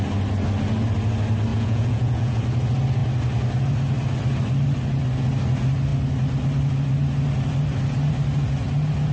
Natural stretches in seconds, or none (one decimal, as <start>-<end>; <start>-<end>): 0.0-1.5; 2.4-9.1